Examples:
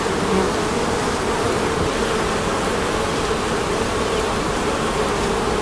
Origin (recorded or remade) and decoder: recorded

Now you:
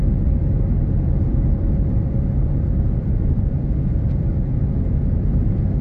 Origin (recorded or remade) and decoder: remade, vocoder, BigVGAN v2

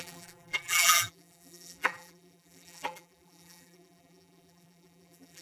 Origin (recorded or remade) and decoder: remade, vocoder, BigVGAN v2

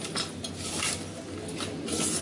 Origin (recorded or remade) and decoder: recorded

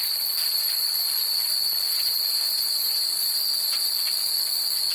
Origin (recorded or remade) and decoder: remade, vocoder, BigVGAN v2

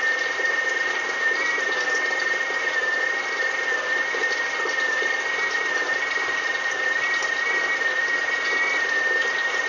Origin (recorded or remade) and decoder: recorded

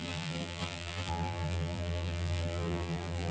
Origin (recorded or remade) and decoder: remade, vocoder, BigVGAN v2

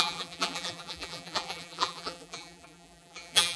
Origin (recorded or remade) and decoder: remade, vocoder, BigVGAN v2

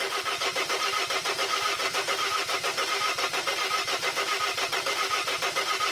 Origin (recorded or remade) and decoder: remade, vocoder, BigVGAN v2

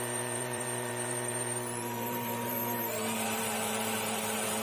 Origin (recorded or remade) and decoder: remade, vocoder, BigVGAN v2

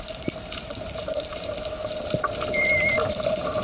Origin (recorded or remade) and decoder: remade, vocoder, BigVGAN v2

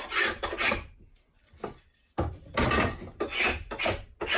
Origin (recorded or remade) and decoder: recorded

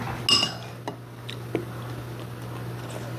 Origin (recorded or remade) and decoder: recorded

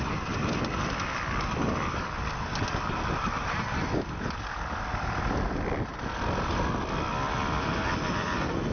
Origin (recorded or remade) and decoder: recorded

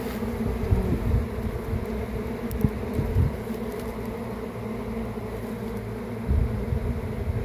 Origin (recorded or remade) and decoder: recorded